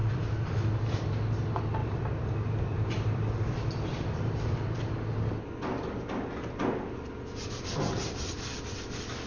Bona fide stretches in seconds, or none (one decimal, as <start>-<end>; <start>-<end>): 1.1-1.8; 4.8-9.3